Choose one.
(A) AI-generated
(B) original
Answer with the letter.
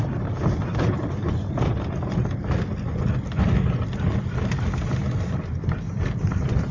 B